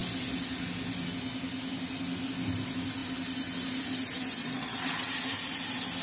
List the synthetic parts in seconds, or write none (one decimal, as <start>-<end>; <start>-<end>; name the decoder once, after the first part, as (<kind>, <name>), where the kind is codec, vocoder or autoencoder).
4.4-5.1 (vocoder, WaveNeXt)